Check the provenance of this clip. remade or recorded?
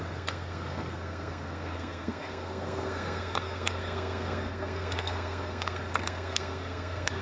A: remade